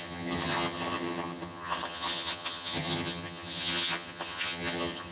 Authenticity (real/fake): fake